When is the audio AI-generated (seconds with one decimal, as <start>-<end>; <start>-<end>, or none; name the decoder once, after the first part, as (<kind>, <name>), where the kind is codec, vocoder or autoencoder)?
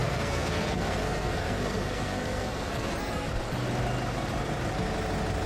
0.0-3.3 (codec, SNAC)